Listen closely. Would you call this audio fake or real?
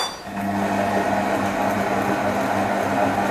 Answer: real